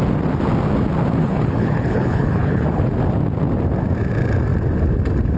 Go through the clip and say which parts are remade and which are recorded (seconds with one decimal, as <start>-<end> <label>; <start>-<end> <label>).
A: 0.0-1.2 recorded; 1.2-2.9 remade; 2.9-5.4 recorded